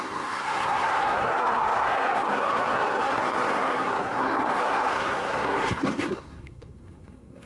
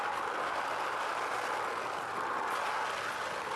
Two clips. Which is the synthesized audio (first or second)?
first